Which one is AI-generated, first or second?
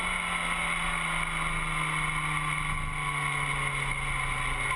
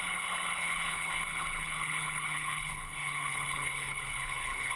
second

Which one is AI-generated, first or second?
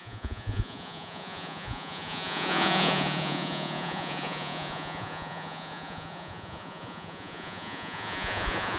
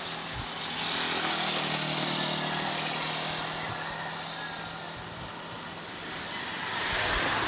first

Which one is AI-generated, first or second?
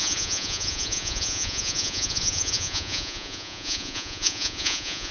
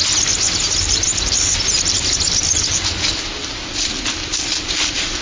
first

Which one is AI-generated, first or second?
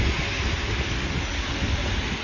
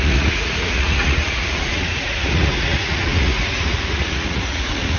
second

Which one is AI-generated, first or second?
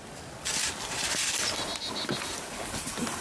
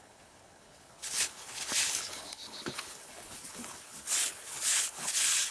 second